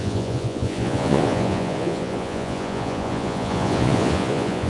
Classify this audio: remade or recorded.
remade